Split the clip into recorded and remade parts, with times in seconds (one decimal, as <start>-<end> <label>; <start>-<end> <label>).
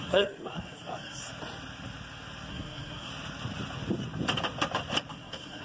0.0-1.2 remade; 1.2-2.5 recorded; 2.5-3.1 remade; 3.1-5.1 recorded; 5.1-5.6 remade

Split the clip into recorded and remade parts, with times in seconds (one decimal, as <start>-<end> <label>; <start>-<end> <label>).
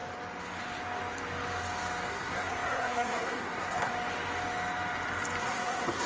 0.0-2.1 recorded; 2.1-3.9 remade; 3.9-5.4 recorded; 5.4-6.1 remade